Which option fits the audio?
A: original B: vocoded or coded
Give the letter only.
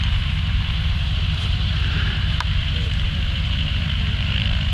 B